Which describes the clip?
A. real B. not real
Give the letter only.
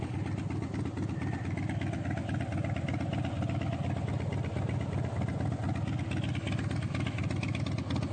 A